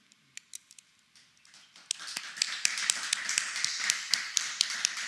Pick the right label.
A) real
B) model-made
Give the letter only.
A